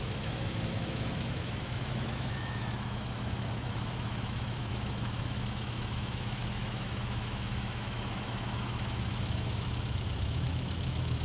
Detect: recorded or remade remade